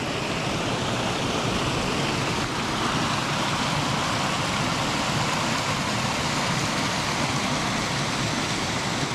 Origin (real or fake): real